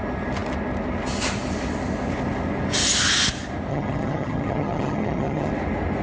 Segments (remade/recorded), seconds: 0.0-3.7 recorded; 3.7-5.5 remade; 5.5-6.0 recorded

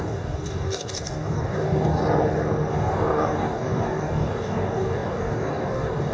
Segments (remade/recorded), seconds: 0.0-2.0 remade; 2.0-2.7 recorded; 2.7-6.1 remade

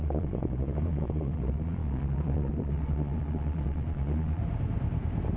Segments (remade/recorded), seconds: 0.0-4.4 remade; 4.4-5.4 recorded